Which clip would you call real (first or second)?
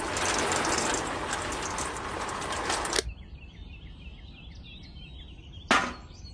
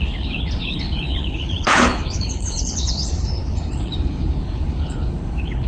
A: first